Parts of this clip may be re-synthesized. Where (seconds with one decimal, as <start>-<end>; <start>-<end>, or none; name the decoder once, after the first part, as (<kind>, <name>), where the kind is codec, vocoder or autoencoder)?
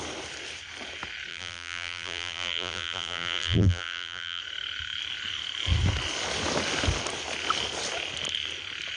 1.3-4.4 (vocoder, BigVGAN v2)